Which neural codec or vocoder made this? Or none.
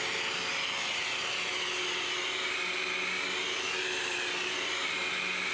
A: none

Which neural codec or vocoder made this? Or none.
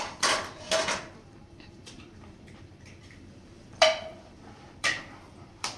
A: vocoder, BigVGAN v2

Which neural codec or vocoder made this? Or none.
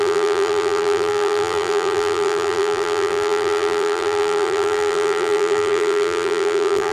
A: vocoder, BigVGAN v2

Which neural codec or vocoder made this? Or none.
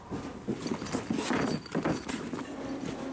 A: none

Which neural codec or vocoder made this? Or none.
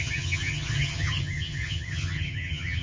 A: vocoder, HiFi-GAN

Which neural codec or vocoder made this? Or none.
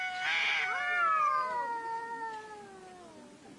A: none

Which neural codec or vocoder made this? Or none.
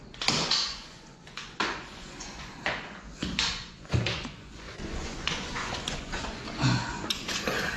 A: vocoder, Vocos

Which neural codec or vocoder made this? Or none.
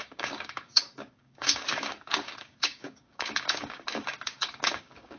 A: codec, DAC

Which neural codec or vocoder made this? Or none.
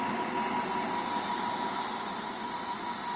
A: none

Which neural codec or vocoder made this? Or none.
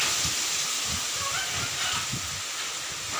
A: none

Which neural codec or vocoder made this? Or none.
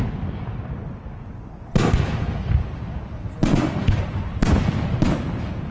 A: none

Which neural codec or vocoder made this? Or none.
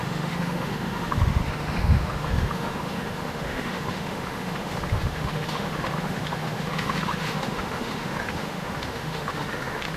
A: autoencoder, DAC-VAE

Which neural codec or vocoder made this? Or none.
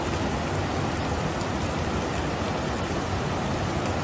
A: none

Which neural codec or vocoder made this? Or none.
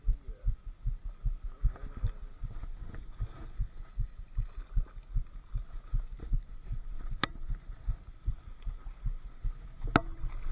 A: none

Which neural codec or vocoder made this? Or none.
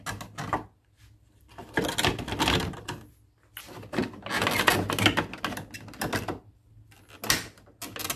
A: none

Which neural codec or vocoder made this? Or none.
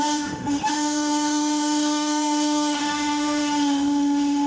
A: autoencoder, DAC-VAE